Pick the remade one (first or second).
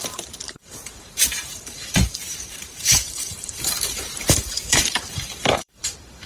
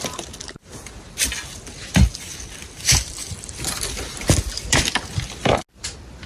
first